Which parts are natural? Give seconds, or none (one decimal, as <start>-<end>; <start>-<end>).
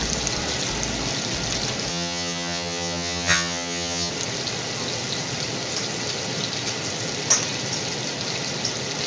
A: 0.0-1.9; 4.1-9.1